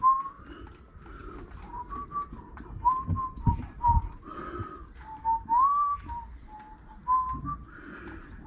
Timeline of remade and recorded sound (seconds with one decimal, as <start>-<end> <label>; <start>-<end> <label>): 0.0-1.2 recorded; 1.2-4.1 remade; 4.1-8.5 recorded